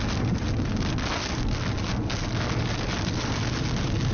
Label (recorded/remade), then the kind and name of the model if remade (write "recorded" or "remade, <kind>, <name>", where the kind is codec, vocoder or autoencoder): recorded